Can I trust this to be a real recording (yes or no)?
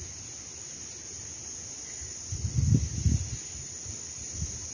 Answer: yes